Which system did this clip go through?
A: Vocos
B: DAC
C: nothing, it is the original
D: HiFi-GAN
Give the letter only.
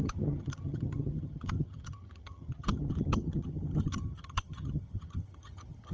D